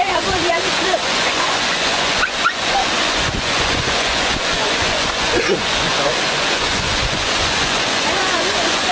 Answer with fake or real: fake